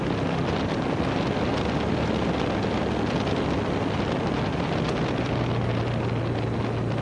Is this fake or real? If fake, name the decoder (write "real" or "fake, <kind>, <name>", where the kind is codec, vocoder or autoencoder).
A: real